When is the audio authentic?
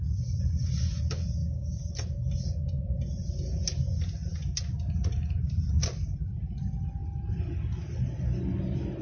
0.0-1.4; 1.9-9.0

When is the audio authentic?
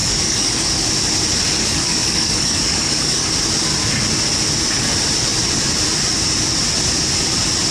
0.9-1.6; 3.3-7.7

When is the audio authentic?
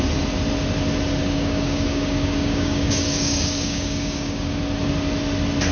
0.0-1.2; 4.6-5.7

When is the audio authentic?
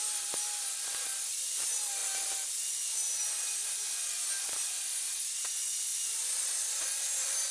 0.0-7.5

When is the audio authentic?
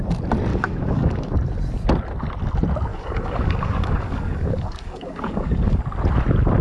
0.0-0.5; 1.3-2.9; 5.8-6.6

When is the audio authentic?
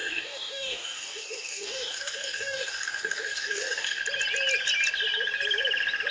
4.0-6.1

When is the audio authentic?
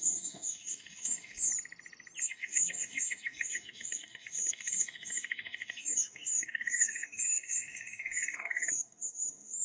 1.5-2.2